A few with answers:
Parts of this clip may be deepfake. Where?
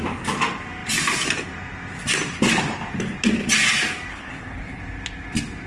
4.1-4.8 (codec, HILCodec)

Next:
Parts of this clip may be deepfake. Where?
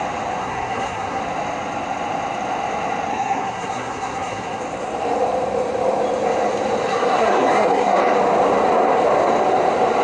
0.4-1.2 (codec, SNAC); 3.1-4.6; 6.9-8.0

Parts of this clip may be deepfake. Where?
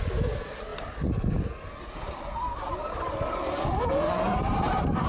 none